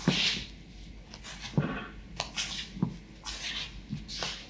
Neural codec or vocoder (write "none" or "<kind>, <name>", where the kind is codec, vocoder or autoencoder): none